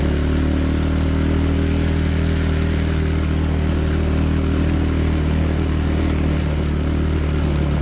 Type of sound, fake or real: real